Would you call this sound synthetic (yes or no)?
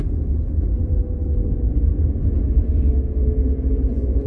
no